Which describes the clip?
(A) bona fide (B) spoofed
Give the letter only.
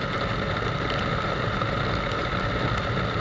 A